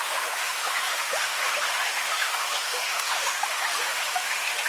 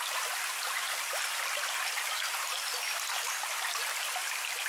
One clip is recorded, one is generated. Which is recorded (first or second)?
second